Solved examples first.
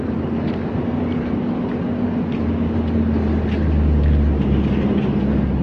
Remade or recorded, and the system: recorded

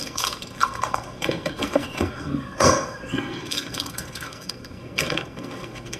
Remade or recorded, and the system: remade, codec, SNAC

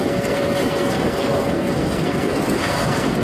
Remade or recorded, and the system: remade, codec, SNAC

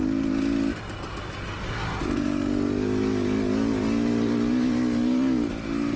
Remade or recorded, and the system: recorded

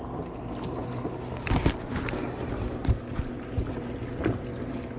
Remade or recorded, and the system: recorded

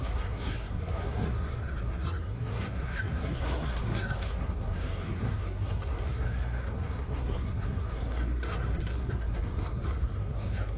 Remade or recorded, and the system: remade, codec, SNAC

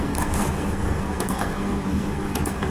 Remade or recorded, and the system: remade, codec, SNAC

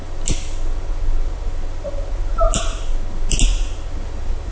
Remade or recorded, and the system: recorded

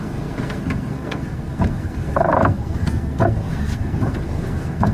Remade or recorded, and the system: remade, codec, SNAC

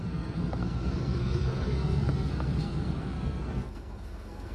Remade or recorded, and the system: remade, codec, SNAC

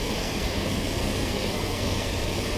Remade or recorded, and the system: remade, codec, SNAC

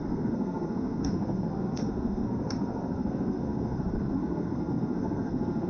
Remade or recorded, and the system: remade, codec, SNAC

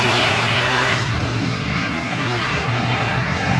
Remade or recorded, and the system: remade, codec, SNAC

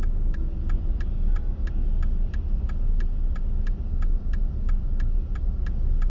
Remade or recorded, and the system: recorded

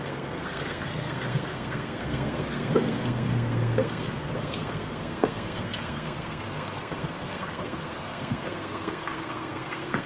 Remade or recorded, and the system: remade, codec, SNAC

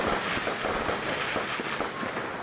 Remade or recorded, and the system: recorded